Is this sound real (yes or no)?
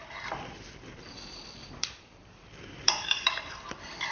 no